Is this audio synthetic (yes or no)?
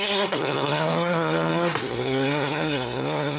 yes